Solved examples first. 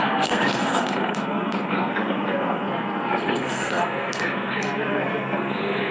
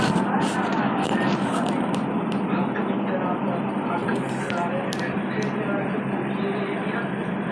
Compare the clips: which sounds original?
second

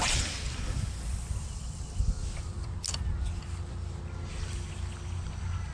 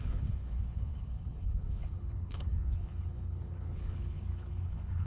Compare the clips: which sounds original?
first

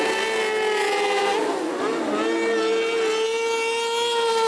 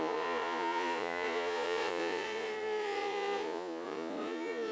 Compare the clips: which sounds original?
first